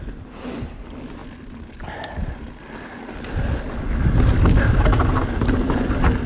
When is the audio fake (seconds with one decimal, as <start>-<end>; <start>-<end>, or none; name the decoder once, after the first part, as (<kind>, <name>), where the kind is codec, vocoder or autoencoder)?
none